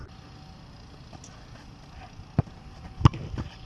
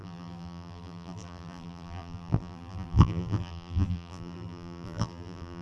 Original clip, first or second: first